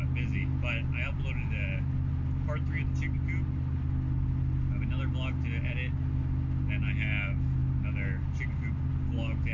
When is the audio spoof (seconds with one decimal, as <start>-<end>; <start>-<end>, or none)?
none